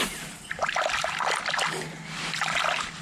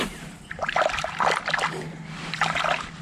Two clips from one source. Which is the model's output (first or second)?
second